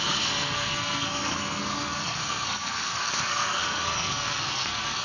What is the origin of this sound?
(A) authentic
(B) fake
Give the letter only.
B